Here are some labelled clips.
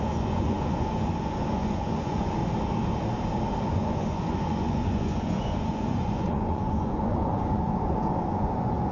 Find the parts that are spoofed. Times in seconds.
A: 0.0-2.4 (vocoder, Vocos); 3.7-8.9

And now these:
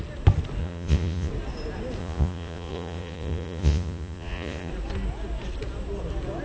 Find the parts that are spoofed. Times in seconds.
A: 0.6-1.3 (vocoder, Vocos); 2.0-4.7

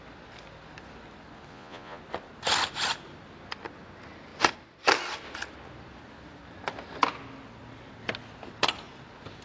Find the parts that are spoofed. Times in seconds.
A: 1.5-2.0 (vocoder, Vocos)

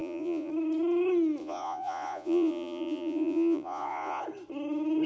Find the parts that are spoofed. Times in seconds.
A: 0.0-0.5 (vocoder, Vocos); 1.4-4.2

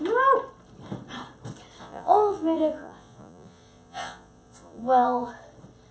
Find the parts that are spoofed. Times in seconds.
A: 1.8-5.3 (vocoder, Vocos)

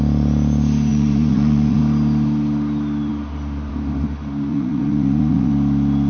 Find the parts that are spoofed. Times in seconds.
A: 0.9-1.8 (vocoder, Vocos); 4.5-5.5

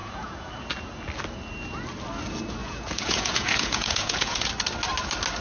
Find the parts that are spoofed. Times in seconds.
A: 0.0-0.5 (vocoder, Vocos); 2.6-4.5

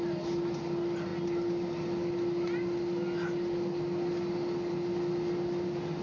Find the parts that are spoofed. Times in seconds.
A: none